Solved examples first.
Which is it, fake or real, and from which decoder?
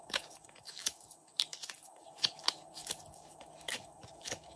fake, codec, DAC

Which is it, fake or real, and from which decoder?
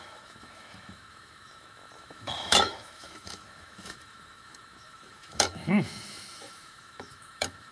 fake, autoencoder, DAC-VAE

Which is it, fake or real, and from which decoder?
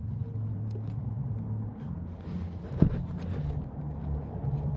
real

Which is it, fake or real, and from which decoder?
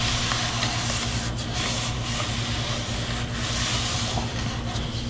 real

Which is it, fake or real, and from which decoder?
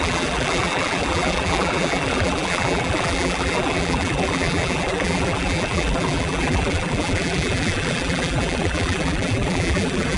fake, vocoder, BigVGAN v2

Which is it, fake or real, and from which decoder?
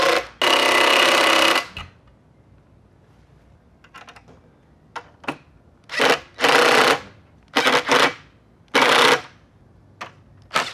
real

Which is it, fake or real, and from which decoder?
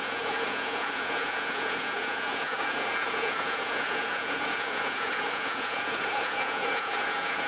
fake, vocoder, Vocos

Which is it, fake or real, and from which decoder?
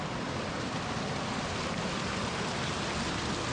real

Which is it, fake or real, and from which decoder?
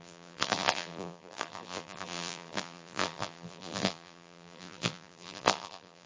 fake, vocoder, BigVGAN v2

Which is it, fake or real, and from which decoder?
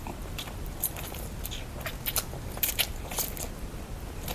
real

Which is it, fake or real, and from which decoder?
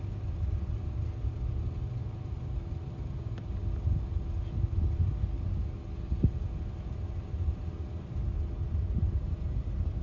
real